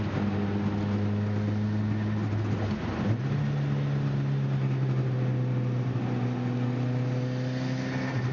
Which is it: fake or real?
real